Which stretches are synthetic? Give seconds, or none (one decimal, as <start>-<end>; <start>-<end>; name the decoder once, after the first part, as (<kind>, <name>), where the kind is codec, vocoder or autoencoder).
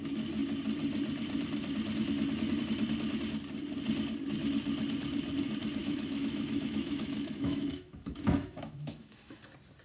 5.8-9.4 (autoencoder, DAC-VAE)